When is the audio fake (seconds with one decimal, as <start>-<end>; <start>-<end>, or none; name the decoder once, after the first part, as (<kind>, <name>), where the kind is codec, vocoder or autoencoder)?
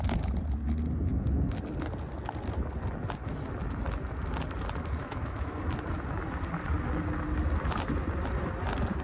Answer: 5.0-5.5 (autoencoder, DAC-VAE)